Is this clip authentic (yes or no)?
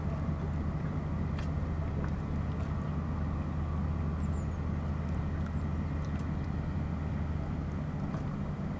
yes